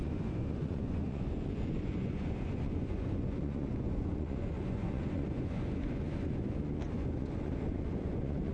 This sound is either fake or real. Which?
fake